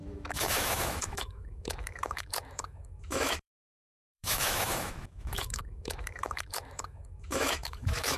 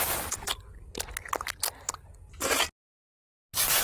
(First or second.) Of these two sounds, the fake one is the first